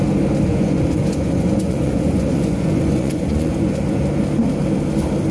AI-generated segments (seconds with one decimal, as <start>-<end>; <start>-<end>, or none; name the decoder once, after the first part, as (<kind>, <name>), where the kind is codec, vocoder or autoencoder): 0.5-3.7 (vocoder, Vocos)